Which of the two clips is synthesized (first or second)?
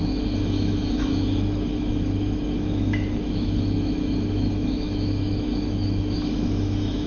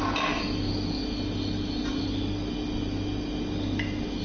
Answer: first